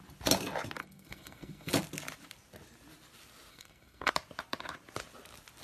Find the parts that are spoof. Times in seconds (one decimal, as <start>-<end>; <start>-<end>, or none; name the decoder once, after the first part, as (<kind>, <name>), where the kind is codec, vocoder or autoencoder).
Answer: 0.8-1.7 (codec, SNAC); 3.5-4.1